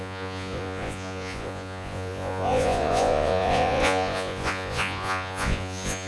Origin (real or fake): fake